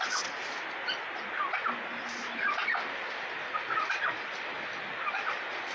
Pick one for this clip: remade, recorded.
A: recorded